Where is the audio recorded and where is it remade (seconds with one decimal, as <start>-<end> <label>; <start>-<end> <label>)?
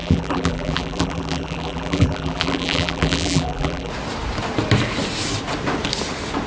0.0-3.9 remade; 3.9-6.5 recorded